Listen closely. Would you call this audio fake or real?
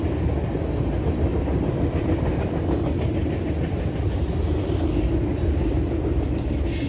real